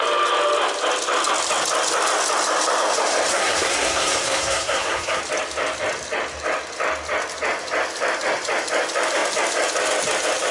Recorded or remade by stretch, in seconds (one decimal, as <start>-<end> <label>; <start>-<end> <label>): 0.0-3.3 recorded; 3.3-5.2 remade; 5.2-10.5 recorded

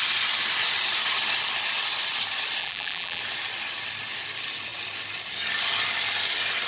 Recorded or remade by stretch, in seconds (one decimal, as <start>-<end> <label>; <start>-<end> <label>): 0.0-2.6 recorded; 2.6-3.2 remade; 3.2-6.7 recorded

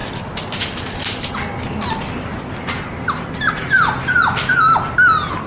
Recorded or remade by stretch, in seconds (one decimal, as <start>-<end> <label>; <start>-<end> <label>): 0.0-5.5 recorded

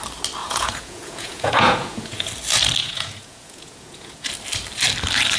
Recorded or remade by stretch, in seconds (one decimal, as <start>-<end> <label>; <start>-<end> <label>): 0.0-0.4 recorded; 0.4-2.3 remade; 2.3-2.8 recorded; 2.8-4.3 remade; 4.3-5.4 recorded

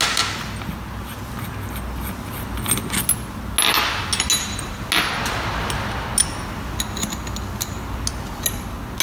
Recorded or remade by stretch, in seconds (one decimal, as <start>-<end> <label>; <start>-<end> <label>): 0.0-9.0 recorded

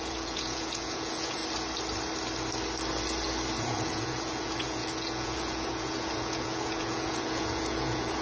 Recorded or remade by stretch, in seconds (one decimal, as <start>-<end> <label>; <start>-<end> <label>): 0.0-1.4 remade; 1.4-3.6 recorded; 3.6-8.2 remade

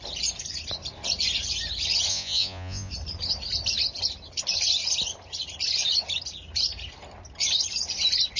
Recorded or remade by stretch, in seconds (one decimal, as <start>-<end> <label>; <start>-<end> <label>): 0.0-2.1 recorded; 2.1-2.9 remade; 2.9-8.4 recorded

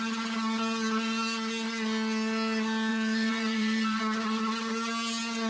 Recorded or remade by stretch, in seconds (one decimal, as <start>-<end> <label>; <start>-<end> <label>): 0.0-2.9 recorded; 2.9-4.0 remade; 4.0-5.5 recorded